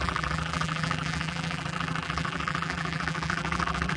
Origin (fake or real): fake